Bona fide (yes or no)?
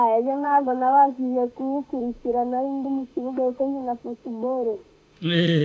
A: no